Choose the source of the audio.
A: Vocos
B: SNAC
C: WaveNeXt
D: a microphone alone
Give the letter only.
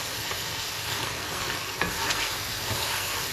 B